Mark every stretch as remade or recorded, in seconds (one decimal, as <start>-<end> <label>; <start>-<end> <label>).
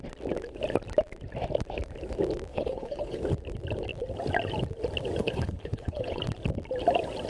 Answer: 0.0-2.5 recorded; 2.5-3.2 remade; 3.2-5.2 recorded; 5.2-6.2 remade; 6.2-7.3 recorded